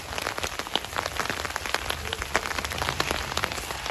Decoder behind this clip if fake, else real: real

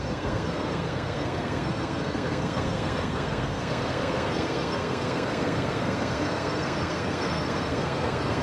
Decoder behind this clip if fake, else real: fake, codec, SNAC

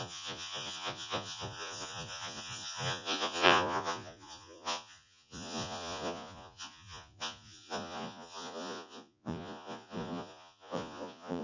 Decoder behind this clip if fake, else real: fake, vocoder, Vocos